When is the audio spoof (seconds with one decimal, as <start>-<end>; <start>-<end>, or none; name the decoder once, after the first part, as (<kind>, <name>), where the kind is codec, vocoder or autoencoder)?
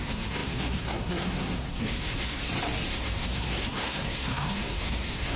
0.0-2.4 (codec, SNAC); 2.9-5.4